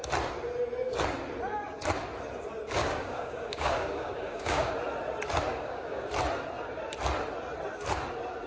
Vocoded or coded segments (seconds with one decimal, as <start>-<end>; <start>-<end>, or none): 2.8-4.7; 5.5-6.1